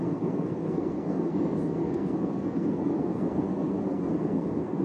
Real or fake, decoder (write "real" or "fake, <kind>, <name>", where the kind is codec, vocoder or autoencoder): fake, codec, SNAC